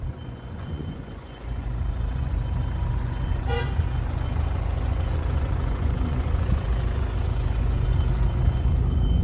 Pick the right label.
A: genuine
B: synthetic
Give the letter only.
B